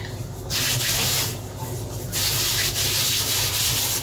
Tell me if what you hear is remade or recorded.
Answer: recorded